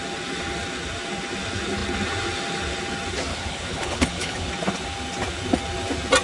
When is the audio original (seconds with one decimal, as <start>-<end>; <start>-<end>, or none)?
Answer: 0.0-3.3; 4.5-6.2